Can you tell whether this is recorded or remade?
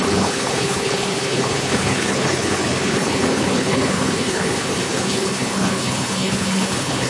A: remade